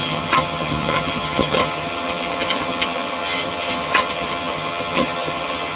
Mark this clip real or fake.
fake